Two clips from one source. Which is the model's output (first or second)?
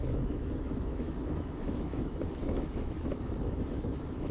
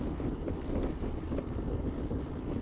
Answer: first